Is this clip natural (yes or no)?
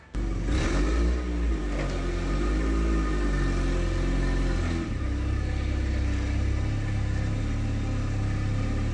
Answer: yes